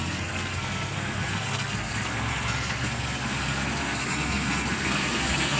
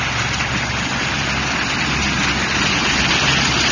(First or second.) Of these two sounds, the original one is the second